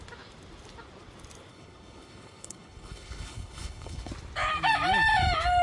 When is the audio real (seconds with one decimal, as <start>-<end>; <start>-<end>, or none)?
0.0-1.5; 4.1-5.6